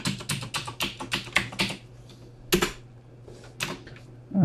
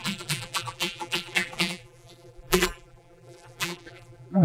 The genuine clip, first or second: first